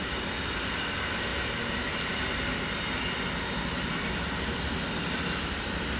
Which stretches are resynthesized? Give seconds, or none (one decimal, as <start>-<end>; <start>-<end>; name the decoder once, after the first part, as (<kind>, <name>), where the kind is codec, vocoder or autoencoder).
none